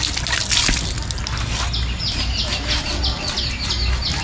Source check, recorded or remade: recorded